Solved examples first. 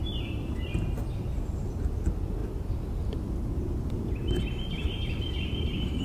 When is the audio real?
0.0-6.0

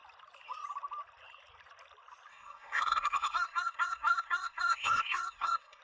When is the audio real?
0.0-2.3

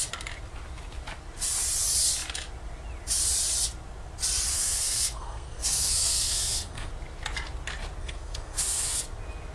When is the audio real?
0.0-4.5; 6.9-8.0; 9.0-9.5